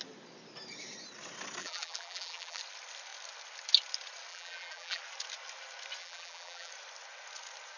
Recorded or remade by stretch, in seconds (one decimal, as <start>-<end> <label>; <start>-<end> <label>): 0.0-1.6 recorded; 1.6-2.6 remade; 2.6-4.3 recorded; 4.3-5.0 remade; 5.0-6.0 recorded; 6.0-6.7 remade; 6.7-7.8 recorded